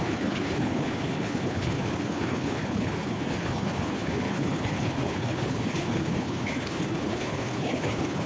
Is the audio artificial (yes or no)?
yes